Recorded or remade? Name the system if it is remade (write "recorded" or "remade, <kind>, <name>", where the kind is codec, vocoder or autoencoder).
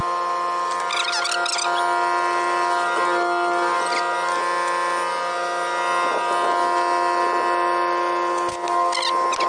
recorded